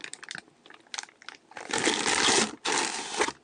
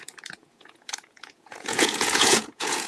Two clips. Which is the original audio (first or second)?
first